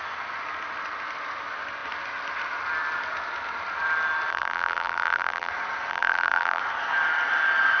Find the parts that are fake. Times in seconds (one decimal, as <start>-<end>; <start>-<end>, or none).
4.3-5.5; 5.9-6.6

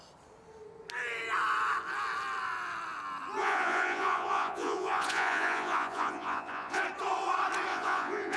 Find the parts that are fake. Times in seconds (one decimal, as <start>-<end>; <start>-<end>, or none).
3.4-6.8; 7.7-8.4

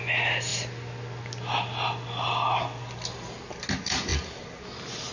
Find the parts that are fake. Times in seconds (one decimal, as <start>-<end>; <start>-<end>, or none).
none

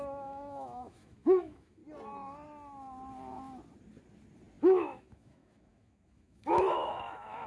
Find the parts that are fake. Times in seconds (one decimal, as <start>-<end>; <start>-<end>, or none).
0.0-1.8; 4.6-7.5